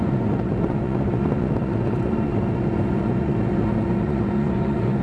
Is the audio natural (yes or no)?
no